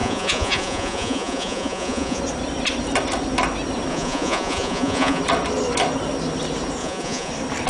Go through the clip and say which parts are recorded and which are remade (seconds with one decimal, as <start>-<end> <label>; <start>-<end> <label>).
0.0-2.2 remade; 2.2-3.9 recorded; 3.9-5.2 remade; 5.2-6.8 recorded; 6.8-7.3 remade; 7.3-7.7 recorded